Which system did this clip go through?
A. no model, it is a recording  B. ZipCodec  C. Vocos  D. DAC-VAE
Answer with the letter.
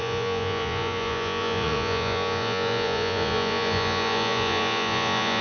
C